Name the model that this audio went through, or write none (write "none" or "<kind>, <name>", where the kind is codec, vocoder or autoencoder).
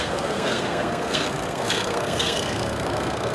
codec, SNAC